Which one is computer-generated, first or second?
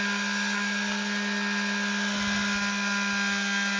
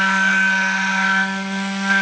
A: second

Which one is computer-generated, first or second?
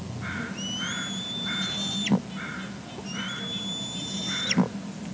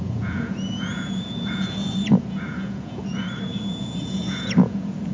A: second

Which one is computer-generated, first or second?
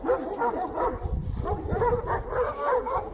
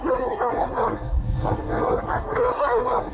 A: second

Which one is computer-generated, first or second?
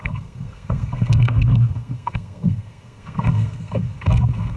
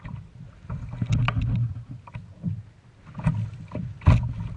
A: first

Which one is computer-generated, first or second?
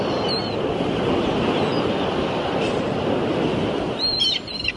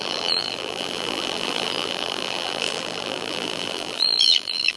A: second